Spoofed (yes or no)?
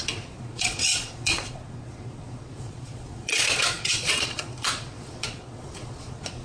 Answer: yes